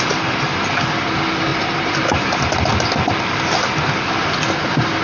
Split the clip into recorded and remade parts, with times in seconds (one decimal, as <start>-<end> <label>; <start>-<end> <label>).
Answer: 0.0-1.5 recorded; 1.5-2.2 remade; 2.2-5.0 recorded